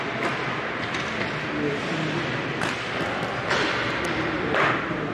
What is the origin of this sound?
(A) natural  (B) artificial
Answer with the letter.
A